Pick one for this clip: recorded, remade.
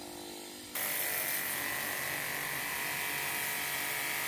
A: recorded